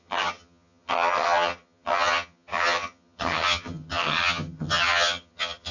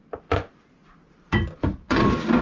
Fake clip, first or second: first